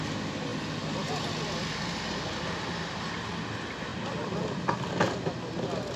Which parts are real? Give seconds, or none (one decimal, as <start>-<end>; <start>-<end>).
0.0-6.0